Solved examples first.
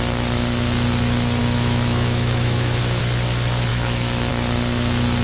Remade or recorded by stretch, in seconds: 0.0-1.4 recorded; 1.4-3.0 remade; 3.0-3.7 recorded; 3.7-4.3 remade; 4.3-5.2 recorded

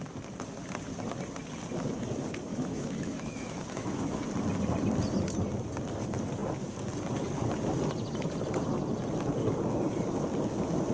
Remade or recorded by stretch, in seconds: 0.0-2.5 recorded; 2.5-4.2 remade; 4.2-10.9 recorded

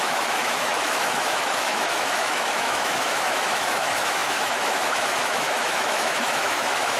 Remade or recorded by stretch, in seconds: 0.0-7.0 remade